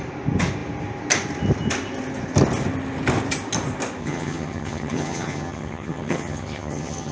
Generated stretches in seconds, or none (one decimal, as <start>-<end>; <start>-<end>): 4.0-7.1